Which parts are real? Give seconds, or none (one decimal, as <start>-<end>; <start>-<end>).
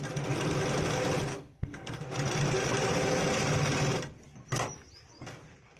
0.0-1.3; 2.0-5.8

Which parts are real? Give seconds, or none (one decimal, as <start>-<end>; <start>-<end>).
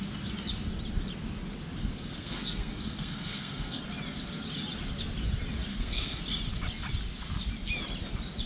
0.0-1.8; 3.8-5.7; 6.2-8.5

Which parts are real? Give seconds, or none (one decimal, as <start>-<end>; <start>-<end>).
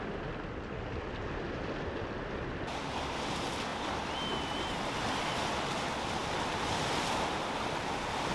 0.0-3.7; 5.5-6.2; 6.7-8.3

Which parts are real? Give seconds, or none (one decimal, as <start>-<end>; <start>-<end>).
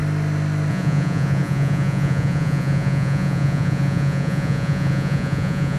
0.0-0.7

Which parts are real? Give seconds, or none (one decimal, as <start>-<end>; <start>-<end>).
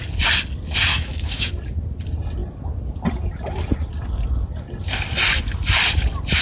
0.0-0.9; 1.5-6.4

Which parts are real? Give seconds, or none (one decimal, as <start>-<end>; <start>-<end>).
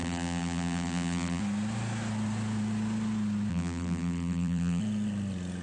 1.4-3.5; 4.8-5.6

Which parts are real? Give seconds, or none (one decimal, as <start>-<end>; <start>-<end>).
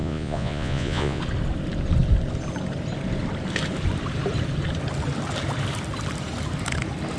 1.2-7.2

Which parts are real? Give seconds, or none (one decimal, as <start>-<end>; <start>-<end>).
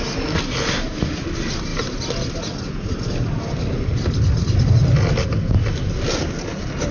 0.0-6.9